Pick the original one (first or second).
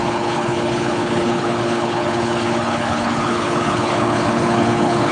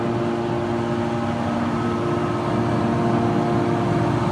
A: second